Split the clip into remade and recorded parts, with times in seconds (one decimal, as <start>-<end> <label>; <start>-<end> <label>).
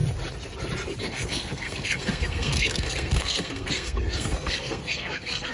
0.0-1.1 recorded; 1.1-5.5 remade